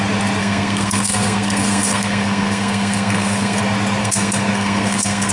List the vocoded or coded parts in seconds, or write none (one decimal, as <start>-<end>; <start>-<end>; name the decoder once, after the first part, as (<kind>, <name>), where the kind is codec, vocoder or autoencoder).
0.4-3.6 (codec, SNAC); 4.0-5.3